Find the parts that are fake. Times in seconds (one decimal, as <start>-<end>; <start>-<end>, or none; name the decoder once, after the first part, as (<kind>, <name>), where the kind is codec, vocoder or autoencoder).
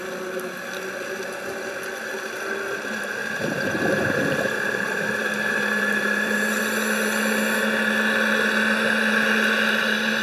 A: 3.2-6.6 (vocoder, BigVGAN v2)